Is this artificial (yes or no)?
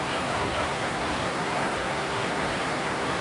yes